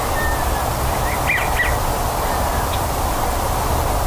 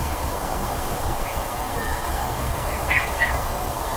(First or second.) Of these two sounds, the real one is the first